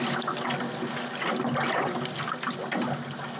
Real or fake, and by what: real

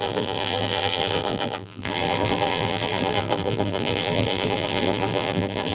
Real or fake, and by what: fake, vocoder, BigVGAN v2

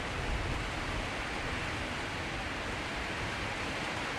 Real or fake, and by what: real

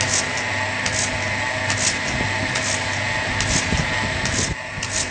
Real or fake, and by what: real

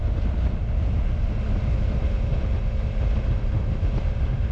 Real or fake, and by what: real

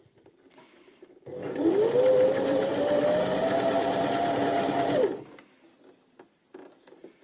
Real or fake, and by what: real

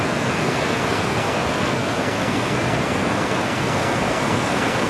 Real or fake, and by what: fake, codec, SNAC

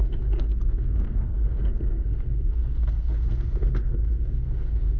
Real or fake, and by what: fake, codec, SNAC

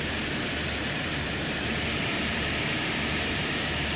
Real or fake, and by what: fake, vocoder, BigVGAN v2